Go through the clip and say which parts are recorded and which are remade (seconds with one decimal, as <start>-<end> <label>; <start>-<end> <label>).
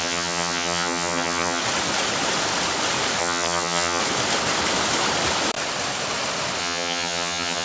0.0-1.6 remade; 1.6-3.2 recorded; 3.2-4.0 remade; 4.0-6.6 recorded; 6.6-7.6 remade